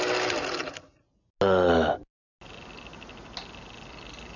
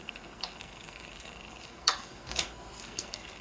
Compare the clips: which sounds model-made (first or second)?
second